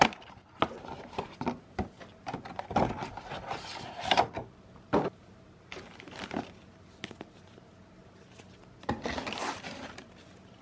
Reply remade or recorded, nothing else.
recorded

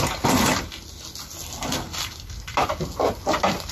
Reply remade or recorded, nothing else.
recorded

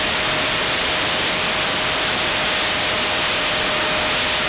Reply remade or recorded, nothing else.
recorded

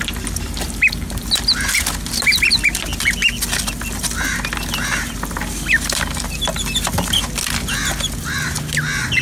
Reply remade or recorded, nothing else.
recorded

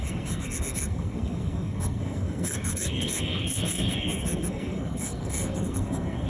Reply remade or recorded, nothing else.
remade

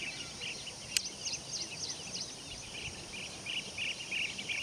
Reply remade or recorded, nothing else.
recorded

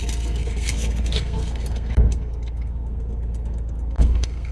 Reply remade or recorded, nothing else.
remade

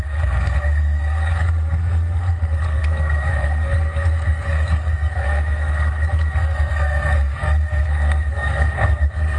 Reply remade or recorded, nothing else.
remade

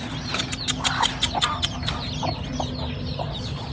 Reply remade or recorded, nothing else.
recorded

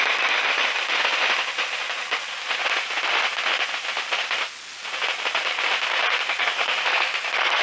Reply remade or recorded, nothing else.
recorded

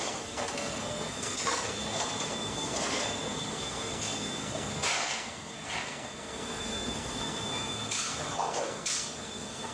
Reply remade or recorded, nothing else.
remade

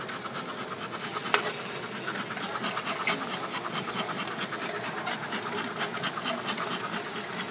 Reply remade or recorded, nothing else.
recorded